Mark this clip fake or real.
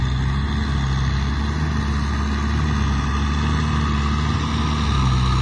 real